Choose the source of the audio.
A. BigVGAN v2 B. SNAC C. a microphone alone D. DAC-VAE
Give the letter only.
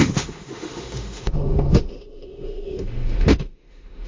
D